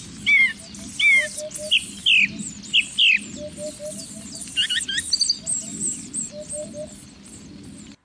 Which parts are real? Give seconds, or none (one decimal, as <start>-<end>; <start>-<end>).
0.0-8.0